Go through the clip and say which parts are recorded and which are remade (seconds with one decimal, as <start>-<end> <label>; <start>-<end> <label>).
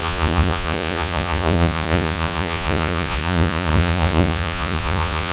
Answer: 0.0-5.3 remade